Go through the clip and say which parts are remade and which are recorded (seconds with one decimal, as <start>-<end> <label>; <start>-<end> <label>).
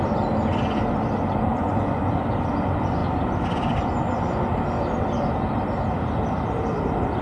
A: 0.0-1.5 recorded; 1.5-2.1 remade; 2.1-7.2 recorded